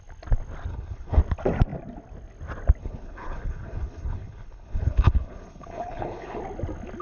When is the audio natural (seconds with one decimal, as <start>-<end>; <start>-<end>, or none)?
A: 0.0-0.7; 1.2-2.8; 6.4-7.0